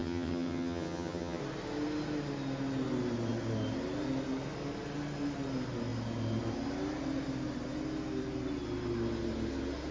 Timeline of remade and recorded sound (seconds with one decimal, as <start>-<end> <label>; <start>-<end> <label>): 0.0-1.4 remade; 1.4-9.9 recorded